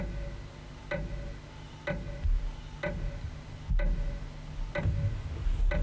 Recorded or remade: recorded